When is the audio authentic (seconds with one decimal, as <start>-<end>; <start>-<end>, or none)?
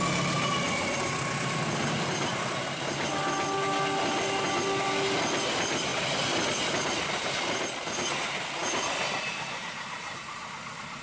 0.0-11.0